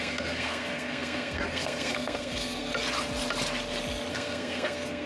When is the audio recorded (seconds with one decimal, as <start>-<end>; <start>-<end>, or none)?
2.7-4.1